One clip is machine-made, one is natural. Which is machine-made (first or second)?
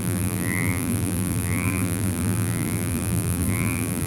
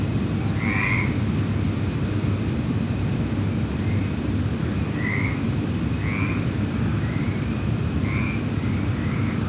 first